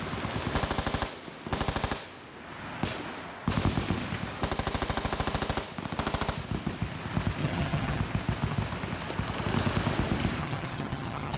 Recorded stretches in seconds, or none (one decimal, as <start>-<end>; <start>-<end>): 0.0-7.4; 8.0-10.4